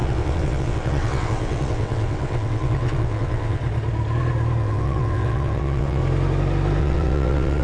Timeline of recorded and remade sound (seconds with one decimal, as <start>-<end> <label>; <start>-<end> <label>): 0.0-3.6 remade; 3.6-4.6 recorded; 4.6-6.0 remade; 6.0-6.8 recorded; 6.8-7.6 remade